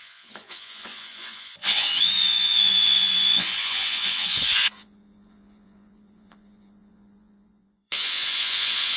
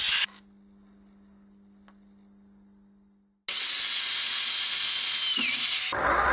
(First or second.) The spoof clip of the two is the first